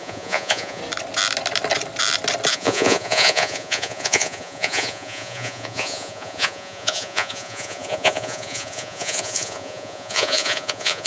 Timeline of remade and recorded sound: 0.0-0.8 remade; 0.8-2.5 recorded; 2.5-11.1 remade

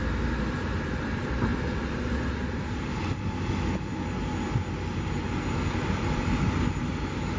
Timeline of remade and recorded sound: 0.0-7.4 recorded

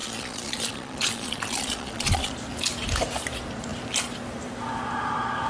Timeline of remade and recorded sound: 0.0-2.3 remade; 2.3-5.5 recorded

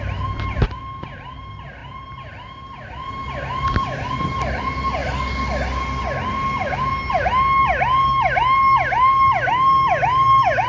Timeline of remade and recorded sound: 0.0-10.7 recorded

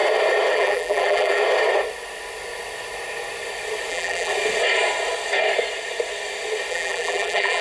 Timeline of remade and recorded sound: 0.0-0.5 recorded; 0.5-1.4 remade; 1.4-3.9 recorded; 3.9-4.3 remade; 4.3-6.7 recorded; 6.7-7.6 remade